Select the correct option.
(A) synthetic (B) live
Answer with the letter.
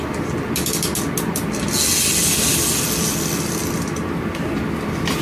B